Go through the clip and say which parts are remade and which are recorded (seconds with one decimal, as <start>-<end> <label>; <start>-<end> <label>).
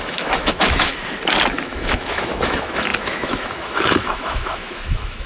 0.0-0.9 remade; 0.9-1.5 recorded; 1.5-5.3 remade